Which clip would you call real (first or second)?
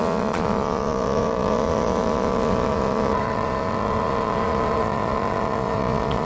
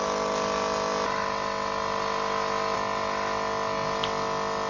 second